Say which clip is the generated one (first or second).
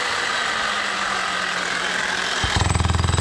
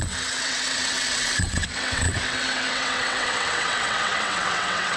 second